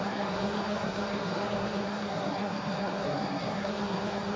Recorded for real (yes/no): no